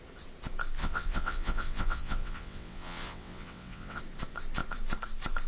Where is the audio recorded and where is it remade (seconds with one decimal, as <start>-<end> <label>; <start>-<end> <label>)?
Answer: 0.0-0.8 recorded; 0.8-4.0 remade; 4.0-5.5 recorded